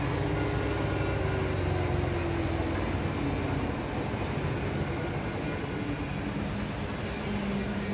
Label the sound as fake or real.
real